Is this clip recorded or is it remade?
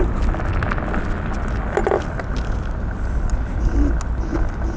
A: recorded